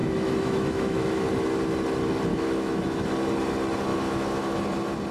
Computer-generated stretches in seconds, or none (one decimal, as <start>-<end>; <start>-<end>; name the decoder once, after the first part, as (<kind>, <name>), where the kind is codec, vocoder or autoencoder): 0.0-1.3 (autoencoder, DAC-VAE); 2.3-3.1; 3.9-4.6